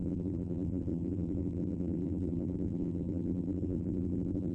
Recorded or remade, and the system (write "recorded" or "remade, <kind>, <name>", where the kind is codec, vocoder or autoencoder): remade, vocoder, BigVGAN v2